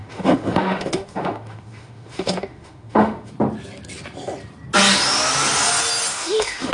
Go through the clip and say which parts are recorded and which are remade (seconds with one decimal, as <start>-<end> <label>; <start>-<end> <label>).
0.0-3.3 remade; 3.3-6.1 recorded; 6.1-6.7 remade